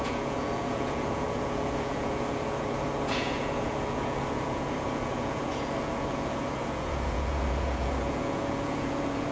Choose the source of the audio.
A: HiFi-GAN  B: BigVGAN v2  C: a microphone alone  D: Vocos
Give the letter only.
D